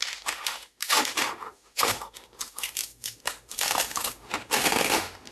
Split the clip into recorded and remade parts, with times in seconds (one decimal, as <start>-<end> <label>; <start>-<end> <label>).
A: 0.0-5.3 remade